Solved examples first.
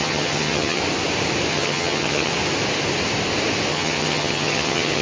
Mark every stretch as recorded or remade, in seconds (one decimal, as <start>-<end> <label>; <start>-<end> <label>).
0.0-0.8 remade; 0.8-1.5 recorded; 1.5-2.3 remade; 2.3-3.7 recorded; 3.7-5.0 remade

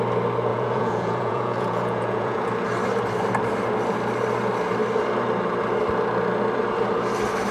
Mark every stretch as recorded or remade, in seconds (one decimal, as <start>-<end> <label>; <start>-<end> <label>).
0.0-0.5 recorded; 0.5-2.4 remade; 2.4-7.5 recorded

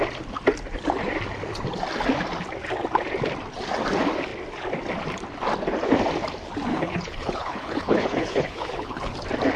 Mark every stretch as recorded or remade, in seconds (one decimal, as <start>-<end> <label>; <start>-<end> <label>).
0.0-6.7 recorded; 6.7-9.1 remade; 9.1-9.6 recorded

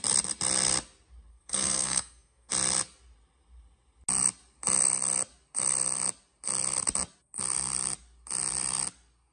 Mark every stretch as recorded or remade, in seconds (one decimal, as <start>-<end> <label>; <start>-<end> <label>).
0.0-1.3 recorded; 1.3-2.5 remade; 2.5-9.3 recorded